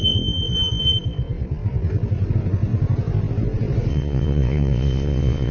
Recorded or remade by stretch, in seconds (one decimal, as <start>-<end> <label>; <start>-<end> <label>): 0.0-3.9 recorded; 3.9-5.5 remade

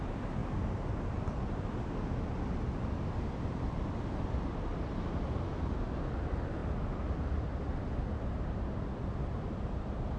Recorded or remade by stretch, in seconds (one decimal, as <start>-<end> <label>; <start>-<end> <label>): 0.0-10.2 recorded

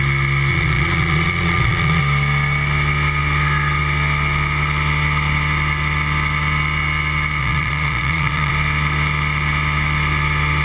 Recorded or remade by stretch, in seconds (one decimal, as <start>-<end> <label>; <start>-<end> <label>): 0.0-0.5 recorded; 0.5-2.0 remade; 2.0-7.4 recorded; 7.4-8.5 remade; 8.5-10.6 recorded

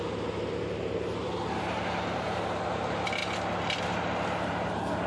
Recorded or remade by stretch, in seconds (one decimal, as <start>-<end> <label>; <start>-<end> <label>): 0.0-5.1 recorded